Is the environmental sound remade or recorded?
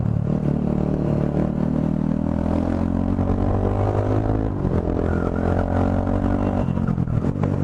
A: recorded